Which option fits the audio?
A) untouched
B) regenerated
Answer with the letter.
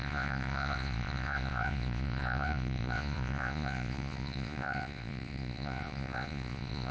B